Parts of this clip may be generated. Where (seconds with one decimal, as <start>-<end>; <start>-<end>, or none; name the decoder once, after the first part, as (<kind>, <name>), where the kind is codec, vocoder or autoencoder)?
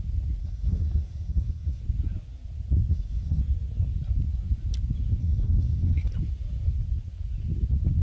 0.4-1.8 (codec, SNAC); 2.9-3.4; 5.2-6.1